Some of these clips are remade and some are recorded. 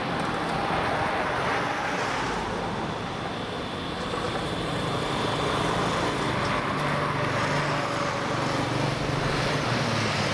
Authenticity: recorded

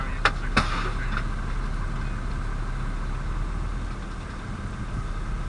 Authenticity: recorded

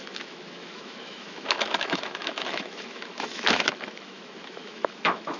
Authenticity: remade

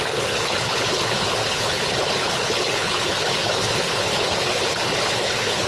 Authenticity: remade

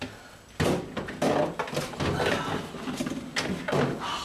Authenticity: recorded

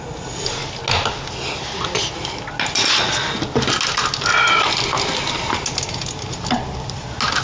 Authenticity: recorded